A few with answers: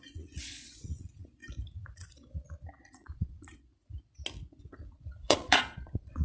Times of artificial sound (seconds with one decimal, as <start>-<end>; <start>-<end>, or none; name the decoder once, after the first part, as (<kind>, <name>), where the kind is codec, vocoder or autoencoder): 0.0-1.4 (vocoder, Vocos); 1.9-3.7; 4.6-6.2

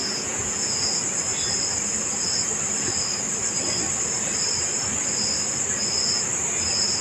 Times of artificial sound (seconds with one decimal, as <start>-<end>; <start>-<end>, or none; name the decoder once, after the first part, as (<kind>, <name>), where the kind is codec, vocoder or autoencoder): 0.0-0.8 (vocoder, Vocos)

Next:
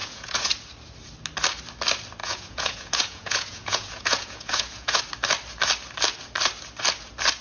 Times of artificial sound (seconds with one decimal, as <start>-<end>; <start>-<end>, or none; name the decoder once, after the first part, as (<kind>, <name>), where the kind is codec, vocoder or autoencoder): 0.0-0.5 (vocoder, Vocos); 2.2-5.0